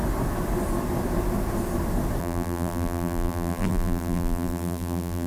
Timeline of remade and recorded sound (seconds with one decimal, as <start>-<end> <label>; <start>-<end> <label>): 0.0-2.2 recorded; 2.2-5.3 remade